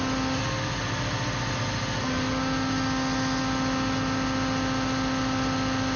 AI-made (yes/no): no